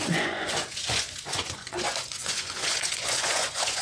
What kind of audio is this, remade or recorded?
remade